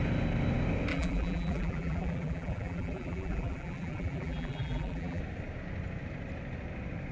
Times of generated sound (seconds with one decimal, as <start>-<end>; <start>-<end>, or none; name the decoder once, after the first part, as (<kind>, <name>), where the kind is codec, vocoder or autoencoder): 0.9-5.2 (vocoder, BigVGAN v2)